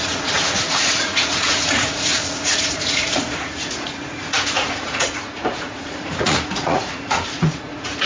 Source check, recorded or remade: remade